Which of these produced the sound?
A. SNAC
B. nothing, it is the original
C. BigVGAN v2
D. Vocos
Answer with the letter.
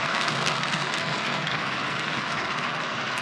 A